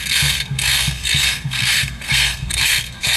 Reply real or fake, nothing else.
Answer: fake